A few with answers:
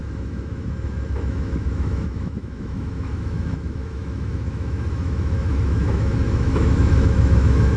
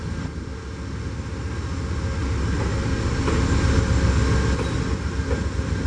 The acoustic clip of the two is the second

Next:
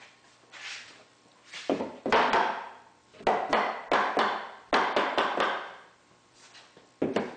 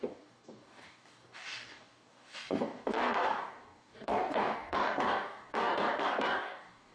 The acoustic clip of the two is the first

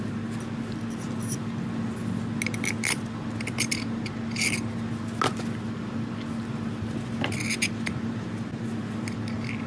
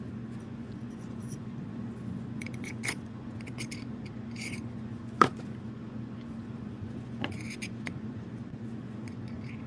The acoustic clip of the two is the first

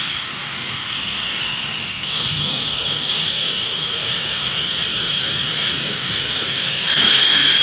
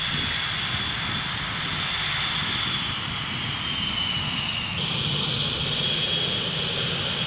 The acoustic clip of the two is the second